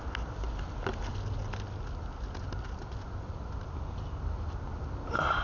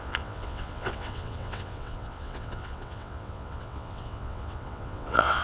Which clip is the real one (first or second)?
first